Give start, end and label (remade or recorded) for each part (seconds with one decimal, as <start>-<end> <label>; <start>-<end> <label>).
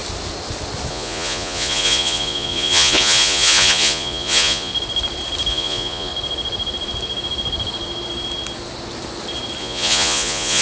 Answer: 0.0-0.9 recorded; 0.9-4.7 remade; 4.7-5.5 recorded; 5.5-6.1 remade; 6.1-9.6 recorded; 9.6-10.6 remade